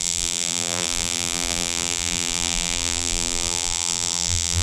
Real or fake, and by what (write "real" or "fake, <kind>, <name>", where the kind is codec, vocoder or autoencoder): fake, vocoder, BigVGAN v2